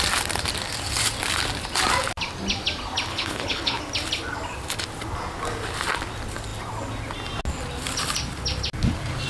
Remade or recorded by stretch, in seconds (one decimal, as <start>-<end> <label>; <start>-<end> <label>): 0.0-3.1 recorded; 3.1-3.8 remade; 3.8-9.3 recorded